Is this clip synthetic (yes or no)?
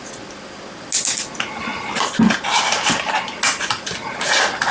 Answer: no